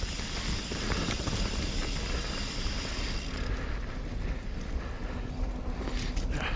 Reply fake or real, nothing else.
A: real